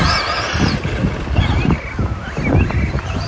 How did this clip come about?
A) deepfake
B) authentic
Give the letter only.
B